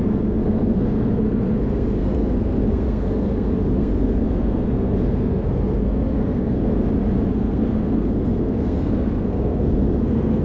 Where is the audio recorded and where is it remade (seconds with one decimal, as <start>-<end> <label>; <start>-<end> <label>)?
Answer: 0.0-6.7 remade; 6.7-7.3 recorded; 7.3-10.4 remade